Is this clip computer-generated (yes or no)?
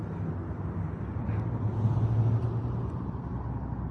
no